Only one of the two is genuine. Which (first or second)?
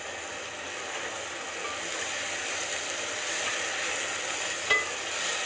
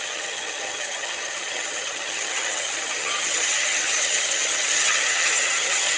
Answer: first